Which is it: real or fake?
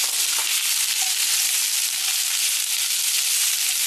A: real